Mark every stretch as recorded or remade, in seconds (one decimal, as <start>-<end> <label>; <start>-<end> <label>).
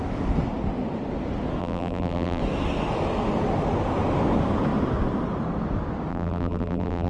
0.0-1.6 recorded; 1.6-2.4 remade; 2.4-6.1 recorded; 6.1-7.1 remade